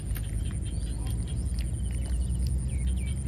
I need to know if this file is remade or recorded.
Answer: recorded